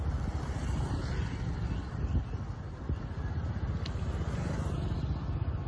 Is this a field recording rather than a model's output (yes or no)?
yes